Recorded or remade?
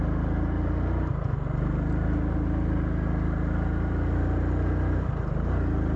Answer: recorded